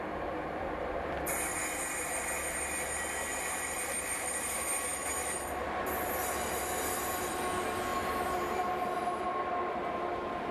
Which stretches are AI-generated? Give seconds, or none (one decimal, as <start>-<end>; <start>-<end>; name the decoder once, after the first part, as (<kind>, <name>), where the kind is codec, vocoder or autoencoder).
7.9-9.2 (vocoder, BigVGAN v2)